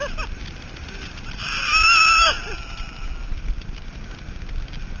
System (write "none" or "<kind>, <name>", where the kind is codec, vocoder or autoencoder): none